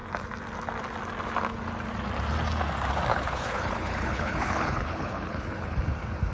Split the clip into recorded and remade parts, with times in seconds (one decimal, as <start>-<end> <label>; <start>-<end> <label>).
0.0-3.1 recorded; 3.1-5.8 remade; 5.8-6.3 recorded